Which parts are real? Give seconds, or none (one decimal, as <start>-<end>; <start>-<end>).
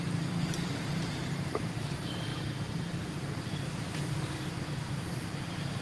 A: none